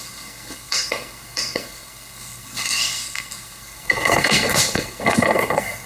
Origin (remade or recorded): remade